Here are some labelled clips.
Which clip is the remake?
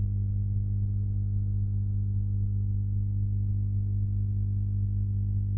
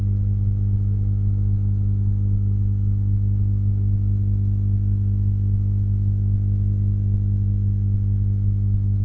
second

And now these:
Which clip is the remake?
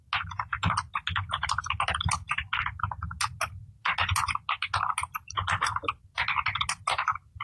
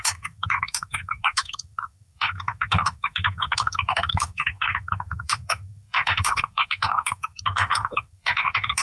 second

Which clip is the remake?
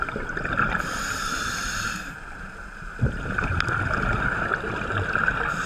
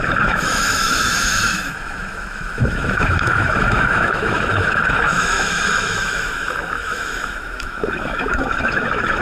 second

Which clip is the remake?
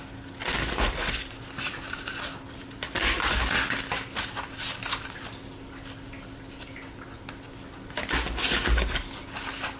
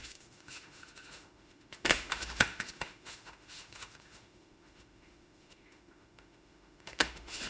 second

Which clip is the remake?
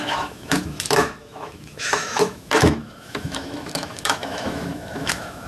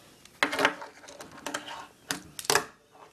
first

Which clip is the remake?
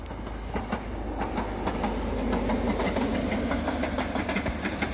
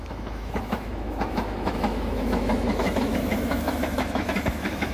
second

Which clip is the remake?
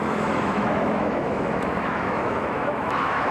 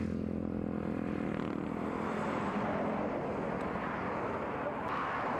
first